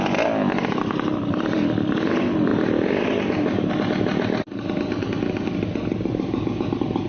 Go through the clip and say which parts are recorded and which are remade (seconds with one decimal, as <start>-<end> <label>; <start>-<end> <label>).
0.0-7.1 recorded